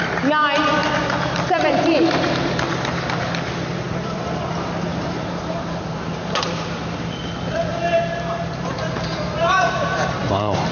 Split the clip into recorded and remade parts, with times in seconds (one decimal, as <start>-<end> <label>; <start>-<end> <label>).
0.0-0.8 recorded; 0.8-2.5 remade; 2.5-3.7 recorded; 3.7-7.0 remade; 7.0-7.7 recorded; 7.7-10.7 remade